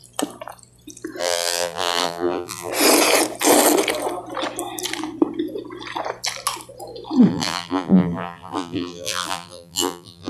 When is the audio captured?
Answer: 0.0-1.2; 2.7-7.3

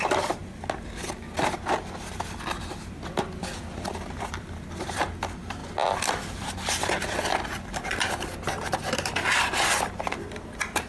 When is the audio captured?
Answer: 0.4-1.8; 5.6-6.1

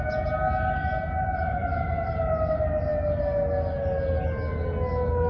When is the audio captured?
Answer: 0.0-5.3

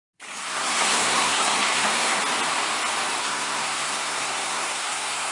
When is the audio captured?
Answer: 0.0-0.4; 2.2-3.2